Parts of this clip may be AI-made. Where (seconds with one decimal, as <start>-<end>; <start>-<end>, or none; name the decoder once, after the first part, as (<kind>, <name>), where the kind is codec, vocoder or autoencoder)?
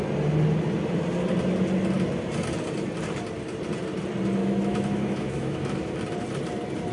4.4-6.0 (autoencoder, DAC-VAE)